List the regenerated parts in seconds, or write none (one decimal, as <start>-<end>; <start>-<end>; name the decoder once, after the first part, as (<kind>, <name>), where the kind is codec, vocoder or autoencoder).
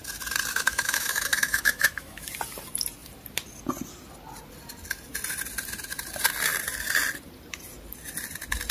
0.5-2.3 (autoencoder, DAC-VAE)